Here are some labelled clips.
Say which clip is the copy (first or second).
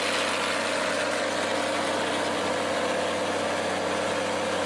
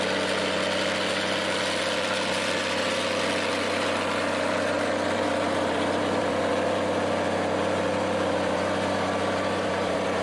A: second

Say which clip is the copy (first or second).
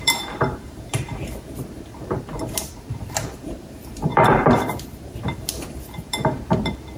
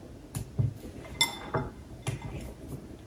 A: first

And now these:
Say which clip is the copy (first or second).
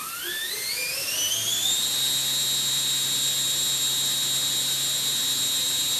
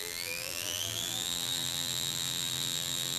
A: second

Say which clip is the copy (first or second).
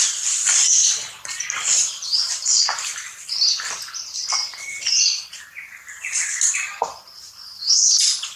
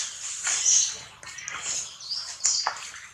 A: first